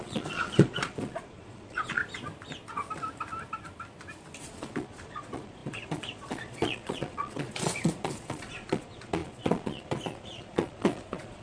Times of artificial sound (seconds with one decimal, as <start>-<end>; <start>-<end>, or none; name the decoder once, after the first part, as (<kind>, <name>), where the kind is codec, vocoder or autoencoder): 0.0-2.0 (vocoder, Vocos); 4.4-11.4